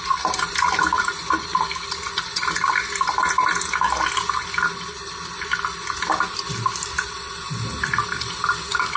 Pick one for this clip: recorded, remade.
recorded